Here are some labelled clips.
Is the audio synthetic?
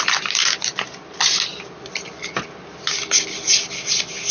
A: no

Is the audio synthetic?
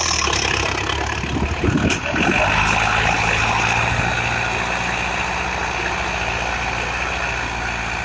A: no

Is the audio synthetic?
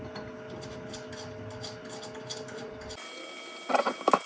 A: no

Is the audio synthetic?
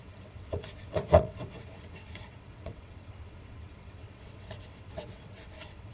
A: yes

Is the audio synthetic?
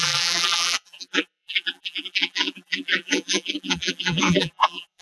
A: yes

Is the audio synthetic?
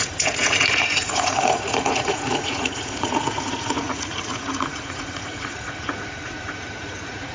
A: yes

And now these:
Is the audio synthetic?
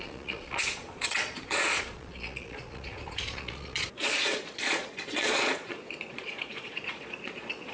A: yes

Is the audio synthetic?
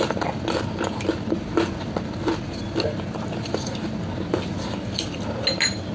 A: no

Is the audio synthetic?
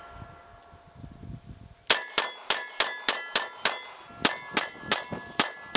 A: no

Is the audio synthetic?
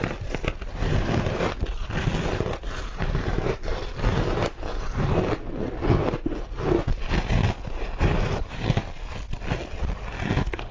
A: no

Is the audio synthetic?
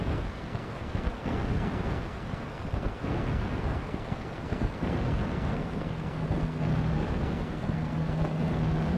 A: yes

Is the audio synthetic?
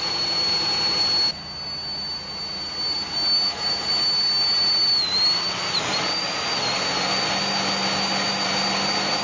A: no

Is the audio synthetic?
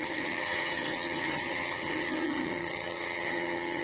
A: yes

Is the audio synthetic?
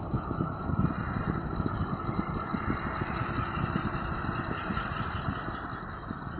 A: no